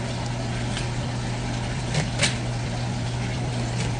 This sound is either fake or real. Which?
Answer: real